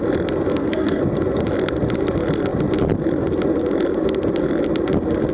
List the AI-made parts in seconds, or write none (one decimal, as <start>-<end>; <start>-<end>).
0.5-1.0

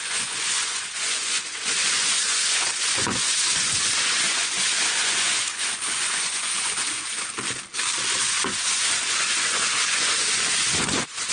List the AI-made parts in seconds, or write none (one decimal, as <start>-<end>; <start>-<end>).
0.0-7.3; 8.2-11.3

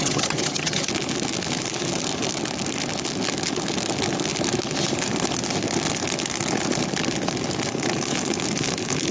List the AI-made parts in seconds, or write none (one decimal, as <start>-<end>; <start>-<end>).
0.0-0.9

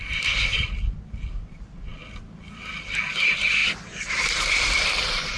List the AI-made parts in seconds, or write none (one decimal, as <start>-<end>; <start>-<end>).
0.0-0.5; 1.5-1.9; 3.1-5.4

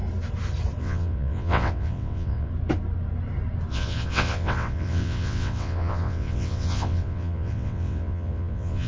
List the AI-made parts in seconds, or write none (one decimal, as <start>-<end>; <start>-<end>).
0.8-2.5; 3.7-8.9

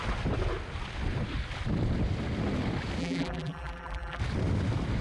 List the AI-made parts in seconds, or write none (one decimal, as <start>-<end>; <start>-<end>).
3.0-4.2

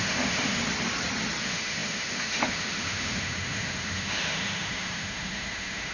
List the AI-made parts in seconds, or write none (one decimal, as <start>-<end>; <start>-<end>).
0.0-0.6; 1.4-5.9

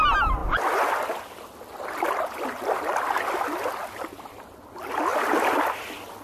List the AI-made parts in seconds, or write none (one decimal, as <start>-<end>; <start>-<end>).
none